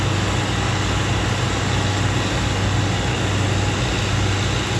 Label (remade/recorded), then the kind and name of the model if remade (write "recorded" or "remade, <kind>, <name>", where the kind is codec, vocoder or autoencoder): recorded